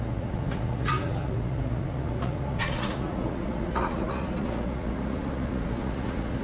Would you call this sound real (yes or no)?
no